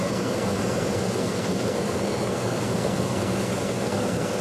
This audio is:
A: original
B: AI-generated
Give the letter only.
B